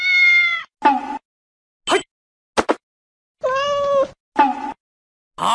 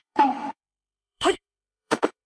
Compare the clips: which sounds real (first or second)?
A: first